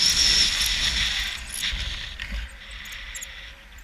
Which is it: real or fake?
real